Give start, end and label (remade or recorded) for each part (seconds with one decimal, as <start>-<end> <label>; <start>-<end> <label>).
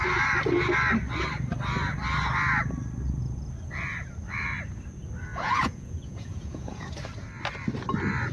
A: 0.0-5.3 recorded; 5.3-6.9 remade; 6.9-8.3 recorded